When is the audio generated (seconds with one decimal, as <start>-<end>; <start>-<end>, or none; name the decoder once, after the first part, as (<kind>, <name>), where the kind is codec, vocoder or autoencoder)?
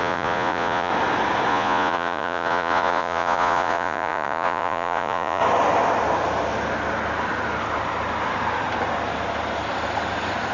0.0-0.9 (vocoder, Vocos); 1.5-5.4